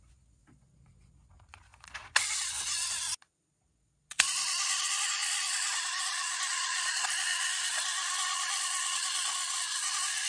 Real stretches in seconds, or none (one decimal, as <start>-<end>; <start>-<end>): none